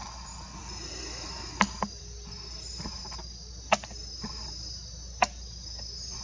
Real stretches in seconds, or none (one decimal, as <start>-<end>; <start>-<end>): 0.0-6.2